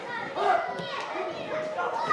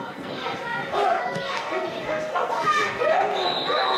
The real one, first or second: first